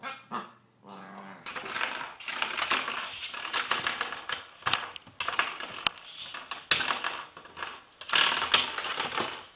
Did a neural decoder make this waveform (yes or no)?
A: no